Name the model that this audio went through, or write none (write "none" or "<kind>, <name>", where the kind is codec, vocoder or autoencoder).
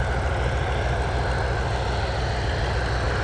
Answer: none